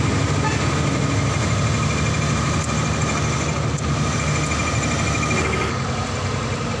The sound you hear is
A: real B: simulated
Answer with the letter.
A